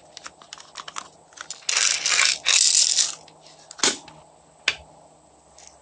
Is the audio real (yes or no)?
yes